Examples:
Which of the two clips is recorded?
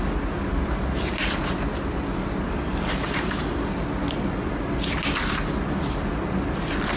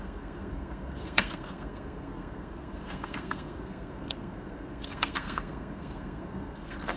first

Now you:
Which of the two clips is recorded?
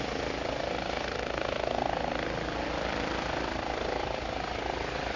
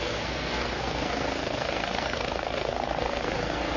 first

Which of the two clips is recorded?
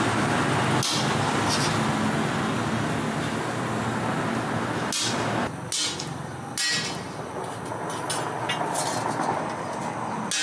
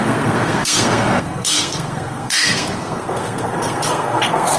first